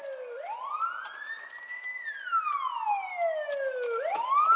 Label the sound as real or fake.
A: real